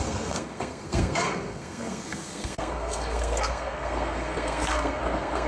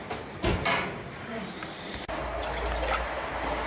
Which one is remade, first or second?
first